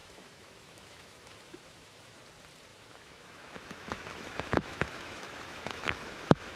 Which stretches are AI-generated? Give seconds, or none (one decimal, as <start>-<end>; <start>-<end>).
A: 0.0-2.2; 2.7-6.6